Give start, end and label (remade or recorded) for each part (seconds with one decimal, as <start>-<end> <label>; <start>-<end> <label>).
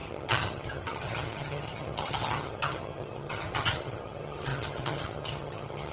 0.0-5.9 remade